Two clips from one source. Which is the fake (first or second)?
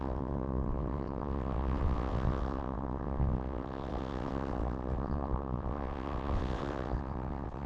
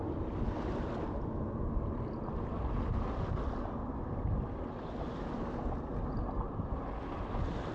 first